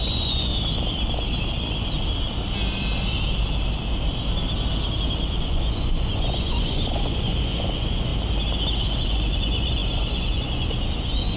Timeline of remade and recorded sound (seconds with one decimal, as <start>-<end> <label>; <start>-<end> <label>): 0.0-0.5 remade; 0.5-5.4 recorded; 5.4-8.1 remade; 8.1-8.8 recorded; 8.8-11.4 remade